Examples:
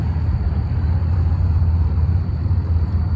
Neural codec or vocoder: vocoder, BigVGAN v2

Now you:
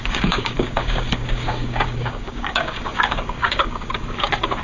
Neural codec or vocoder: codec, DAC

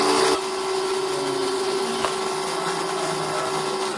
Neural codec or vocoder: none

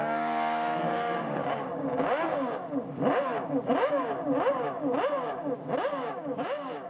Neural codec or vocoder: codec, DAC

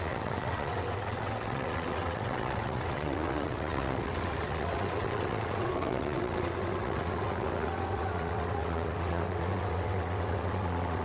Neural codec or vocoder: vocoder, WaveNeXt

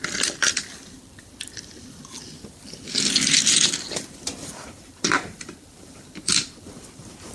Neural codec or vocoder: vocoder, BigVGAN v2